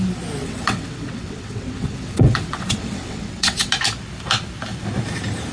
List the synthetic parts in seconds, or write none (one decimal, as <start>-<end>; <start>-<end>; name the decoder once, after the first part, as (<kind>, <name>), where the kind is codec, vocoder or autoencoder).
0.4-3.7 (vocoder, WaveNeXt)